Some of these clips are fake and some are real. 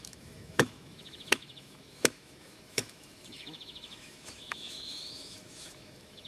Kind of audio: fake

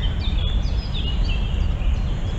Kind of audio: real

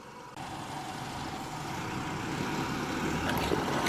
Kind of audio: real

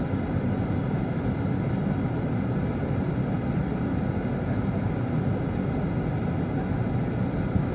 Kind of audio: real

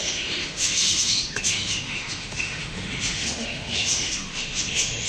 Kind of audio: fake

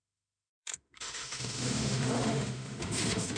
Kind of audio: fake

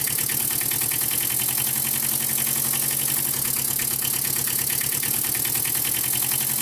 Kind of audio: real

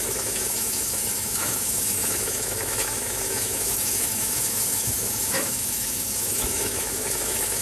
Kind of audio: fake